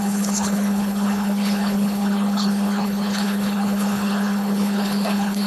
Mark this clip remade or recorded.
remade